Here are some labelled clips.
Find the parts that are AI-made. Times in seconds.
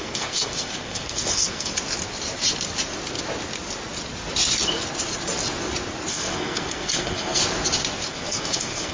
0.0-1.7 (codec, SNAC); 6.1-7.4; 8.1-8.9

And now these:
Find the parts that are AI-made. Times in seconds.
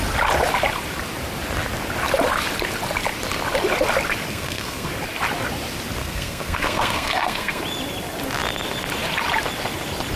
4.3-4.9 (codec, SNAC); 6.0-7.6